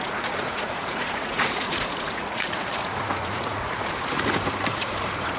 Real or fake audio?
fake